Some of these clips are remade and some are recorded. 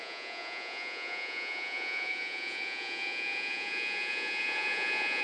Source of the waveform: remade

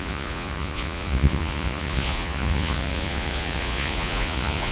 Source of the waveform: remade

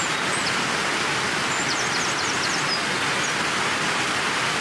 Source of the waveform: recorded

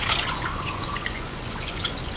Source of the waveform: remade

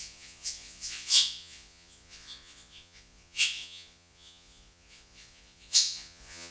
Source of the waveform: remade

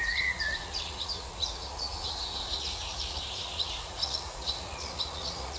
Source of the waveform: remade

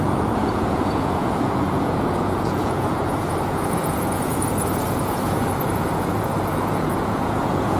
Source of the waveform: remade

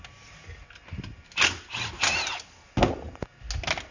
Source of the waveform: recorded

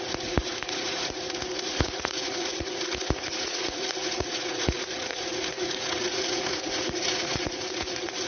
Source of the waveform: remade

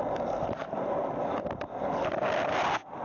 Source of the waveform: recorded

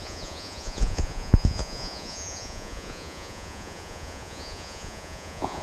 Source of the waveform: remade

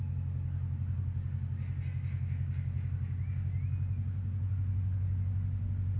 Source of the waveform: recorded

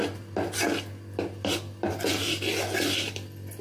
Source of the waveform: recorded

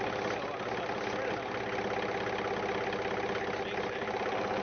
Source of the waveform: recorded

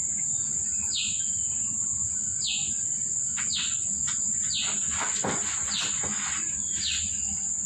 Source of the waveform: recorded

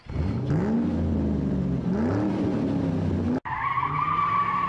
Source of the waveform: recorded